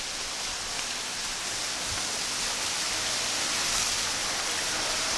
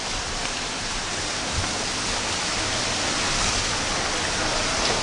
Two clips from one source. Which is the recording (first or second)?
first